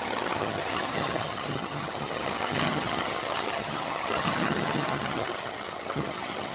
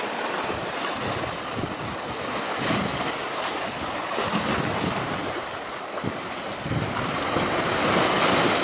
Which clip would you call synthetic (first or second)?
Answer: first